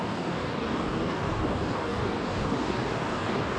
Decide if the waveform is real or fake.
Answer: fake